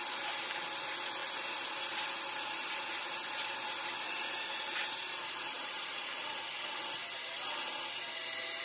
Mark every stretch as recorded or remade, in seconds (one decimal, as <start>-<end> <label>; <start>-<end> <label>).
0.0-4.8 recorded; 4.8-6.3 remade; 6.3-8.6 recorded